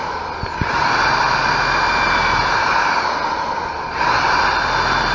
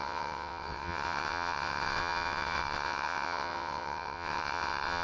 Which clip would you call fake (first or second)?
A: second